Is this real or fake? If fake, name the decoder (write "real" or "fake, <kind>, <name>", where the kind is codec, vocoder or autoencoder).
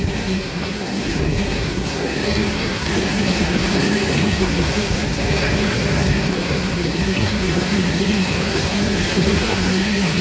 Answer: fake, codec, SNAC